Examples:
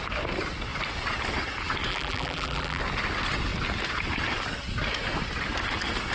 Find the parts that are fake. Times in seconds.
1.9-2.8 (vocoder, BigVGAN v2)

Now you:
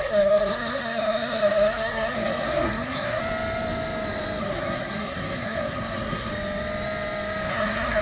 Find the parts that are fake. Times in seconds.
0.0-3.2 (codec, SNAC); 4.4-6.3; 7.5-8.0